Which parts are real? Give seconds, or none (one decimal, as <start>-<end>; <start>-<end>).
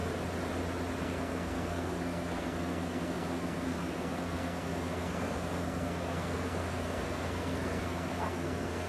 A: 0.0-1.0